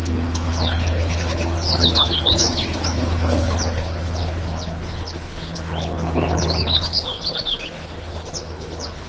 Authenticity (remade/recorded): remade